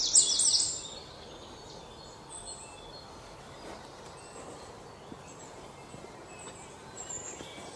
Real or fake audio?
real